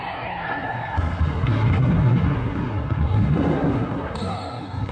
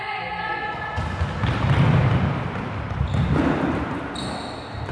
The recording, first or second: second